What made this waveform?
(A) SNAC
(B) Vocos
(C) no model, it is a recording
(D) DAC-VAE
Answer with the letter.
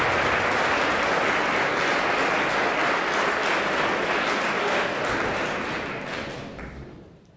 C